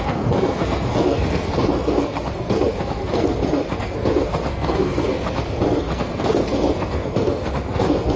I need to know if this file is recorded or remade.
remade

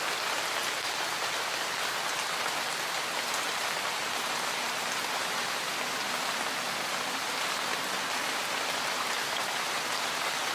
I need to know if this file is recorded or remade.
recorded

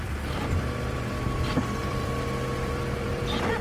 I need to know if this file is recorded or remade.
remade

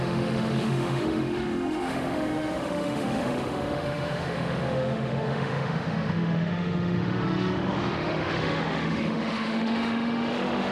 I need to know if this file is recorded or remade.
remade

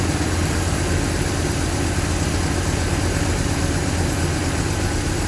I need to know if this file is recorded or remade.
recorded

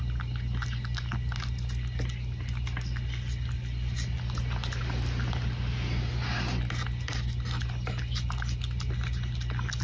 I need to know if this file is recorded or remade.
recorded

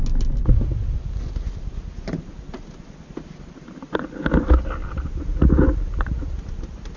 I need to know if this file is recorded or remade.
recorded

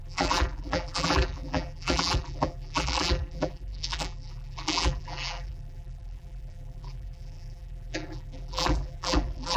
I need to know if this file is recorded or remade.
remade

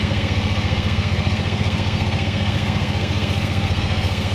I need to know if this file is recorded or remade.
remade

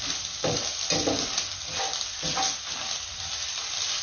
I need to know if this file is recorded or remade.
recorded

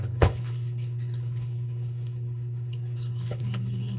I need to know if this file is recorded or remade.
remade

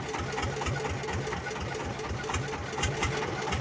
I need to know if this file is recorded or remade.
recorded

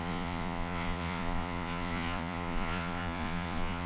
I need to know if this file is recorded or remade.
remade